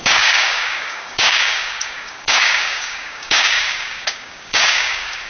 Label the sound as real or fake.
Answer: fake